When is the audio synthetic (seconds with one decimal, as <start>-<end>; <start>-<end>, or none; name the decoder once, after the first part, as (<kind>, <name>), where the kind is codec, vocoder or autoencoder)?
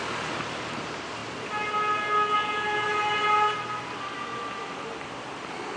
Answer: none